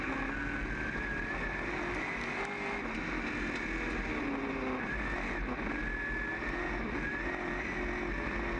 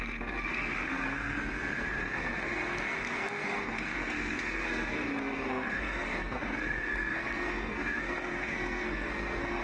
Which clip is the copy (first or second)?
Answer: second